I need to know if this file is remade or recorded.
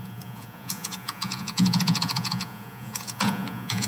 remade